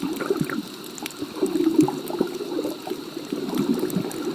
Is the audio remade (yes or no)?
no